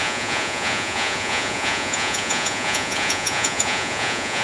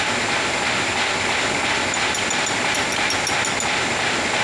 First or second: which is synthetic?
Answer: first